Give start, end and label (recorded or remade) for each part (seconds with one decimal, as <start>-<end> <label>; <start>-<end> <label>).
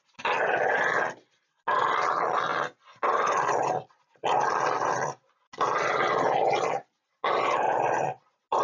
0.0-8.6 recorded